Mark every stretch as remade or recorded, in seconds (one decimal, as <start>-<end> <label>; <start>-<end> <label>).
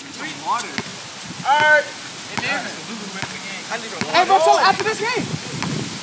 0.0-6.0 recorded